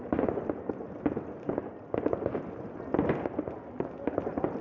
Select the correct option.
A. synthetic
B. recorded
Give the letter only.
B